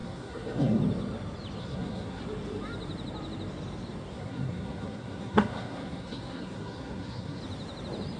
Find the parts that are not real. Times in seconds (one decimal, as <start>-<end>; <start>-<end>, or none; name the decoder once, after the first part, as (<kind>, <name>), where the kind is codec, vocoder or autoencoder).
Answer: 0.0-0.8 (codec, SNAC); 1.6-2.2; 4.1-7.4